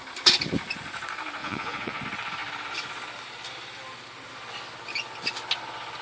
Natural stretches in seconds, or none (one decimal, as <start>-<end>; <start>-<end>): 0.0-1.4; 2.0-6.0